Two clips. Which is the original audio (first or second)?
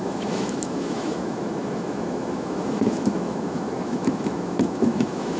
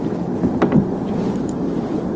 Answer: second